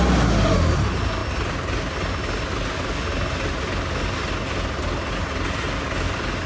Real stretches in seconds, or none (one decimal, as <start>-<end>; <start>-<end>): 0.0-6.5

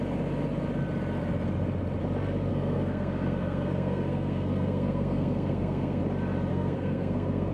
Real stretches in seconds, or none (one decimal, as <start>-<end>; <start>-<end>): 0.0-2.5; 6.0-6.5

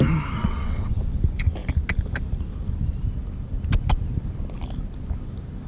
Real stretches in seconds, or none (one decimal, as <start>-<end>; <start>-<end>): 0.0-0.4; 1.0-5.7

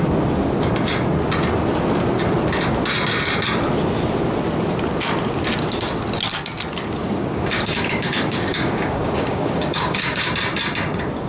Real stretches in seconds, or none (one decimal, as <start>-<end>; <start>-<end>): 0.0-7.0; 10.3-11.3

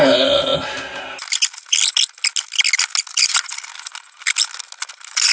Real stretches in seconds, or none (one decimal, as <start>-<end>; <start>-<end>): 0.0-5.3

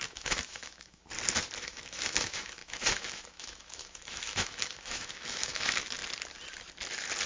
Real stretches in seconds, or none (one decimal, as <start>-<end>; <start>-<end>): 1.0-1.6; 6.0-7.3

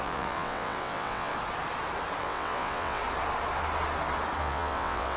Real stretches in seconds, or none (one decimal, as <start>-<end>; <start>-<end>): 1.3-2.2; 3.0-4.4